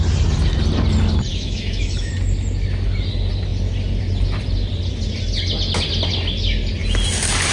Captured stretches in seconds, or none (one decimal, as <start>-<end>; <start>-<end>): 0.0-1.3; 2.1-7.5